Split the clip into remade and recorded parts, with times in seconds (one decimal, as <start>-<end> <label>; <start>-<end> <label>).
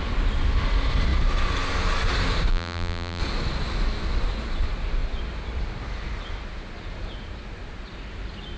0.0-2.5 recorded; 2.5-3.2 remade; 3.2-8.6 recorded